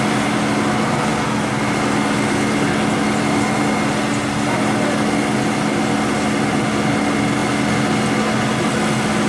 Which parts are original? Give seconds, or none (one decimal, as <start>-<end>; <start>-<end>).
0.0-9.3